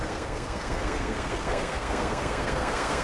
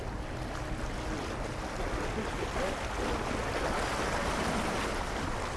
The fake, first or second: first